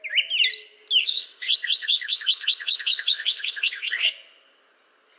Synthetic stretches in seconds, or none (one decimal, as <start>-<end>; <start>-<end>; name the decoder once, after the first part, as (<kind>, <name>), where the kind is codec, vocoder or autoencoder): 1.0-4.1 (codec, ZipCodec)